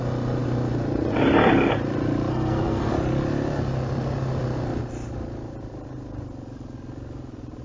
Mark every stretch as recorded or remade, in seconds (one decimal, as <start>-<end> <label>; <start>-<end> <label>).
0.0-2.3 recorded; 2.3-2.9 remade; 2.9-7.6 recorded

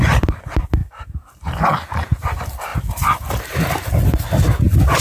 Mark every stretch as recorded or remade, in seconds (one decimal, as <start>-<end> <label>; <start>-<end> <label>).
0.0-5.0 recorded

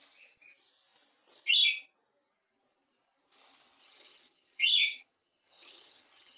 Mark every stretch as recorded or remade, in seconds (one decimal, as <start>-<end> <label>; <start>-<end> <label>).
0.0-3.8 recorded; 3.8-6.4 remade

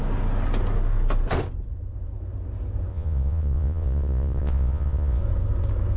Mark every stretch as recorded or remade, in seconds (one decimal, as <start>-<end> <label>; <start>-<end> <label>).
0.0-2.9 recorded; 2.9-5.2 remade; 5.2-6.0 recorded

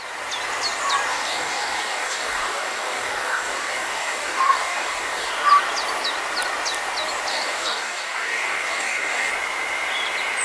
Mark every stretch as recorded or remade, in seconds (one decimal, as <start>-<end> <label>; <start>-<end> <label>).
0.0-1.1 recorded; 1.1-5.3 remade; 5.3-7.3 recorded; 7.3-9.3 remade; 9.3-10.4 recorded